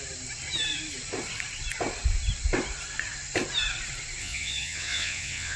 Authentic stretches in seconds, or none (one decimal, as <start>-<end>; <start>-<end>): 0.0-4.2